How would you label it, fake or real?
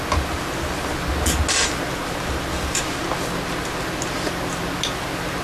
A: real